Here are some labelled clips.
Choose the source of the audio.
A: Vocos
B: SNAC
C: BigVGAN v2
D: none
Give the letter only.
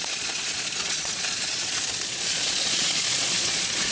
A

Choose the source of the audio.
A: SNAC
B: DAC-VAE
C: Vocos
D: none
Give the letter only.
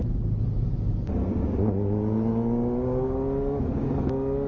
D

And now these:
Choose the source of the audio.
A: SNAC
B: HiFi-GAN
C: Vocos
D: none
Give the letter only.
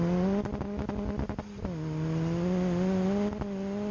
D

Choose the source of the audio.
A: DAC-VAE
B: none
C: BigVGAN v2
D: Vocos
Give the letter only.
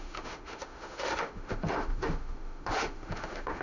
A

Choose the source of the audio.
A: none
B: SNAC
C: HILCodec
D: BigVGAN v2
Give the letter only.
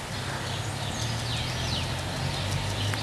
A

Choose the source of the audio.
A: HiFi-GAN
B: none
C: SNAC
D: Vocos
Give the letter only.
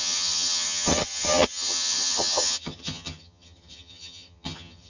A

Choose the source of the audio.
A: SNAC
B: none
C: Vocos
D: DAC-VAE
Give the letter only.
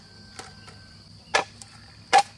B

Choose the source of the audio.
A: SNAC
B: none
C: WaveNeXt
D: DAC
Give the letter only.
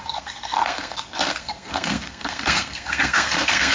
A